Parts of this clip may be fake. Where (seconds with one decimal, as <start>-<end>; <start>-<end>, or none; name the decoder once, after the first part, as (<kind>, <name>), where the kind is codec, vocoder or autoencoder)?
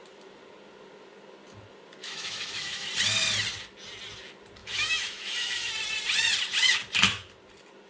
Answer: 2.0-2.9 (autoencoder, DAC-VAE); 4.6-5.7